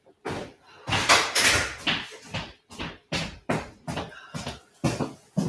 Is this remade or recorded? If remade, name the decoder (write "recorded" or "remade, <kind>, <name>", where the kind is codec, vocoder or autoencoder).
recorded